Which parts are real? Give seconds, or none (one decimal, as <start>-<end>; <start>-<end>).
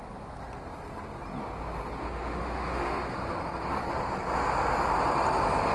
0.0-2.0; 3.3-5.7